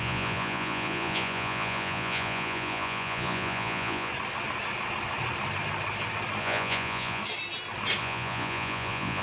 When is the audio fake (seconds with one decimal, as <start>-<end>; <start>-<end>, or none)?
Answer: 0.0-4.1; 6.4-7.2; 8.0-9.2